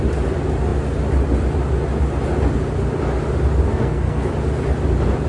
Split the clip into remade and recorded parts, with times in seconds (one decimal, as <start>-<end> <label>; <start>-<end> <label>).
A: 0.0-3.7 recorded; 3.7-4.3 remade; 4.3-5.3 recorded